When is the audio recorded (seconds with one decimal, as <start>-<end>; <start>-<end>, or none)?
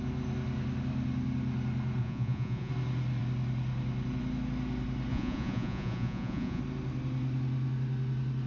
0.0-2.0; 2.7-5.1; 6.6-8.5